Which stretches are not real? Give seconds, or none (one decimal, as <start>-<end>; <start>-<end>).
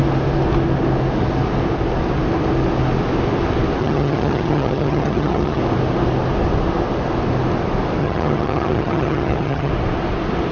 3.8-5.6; 8.0-9.7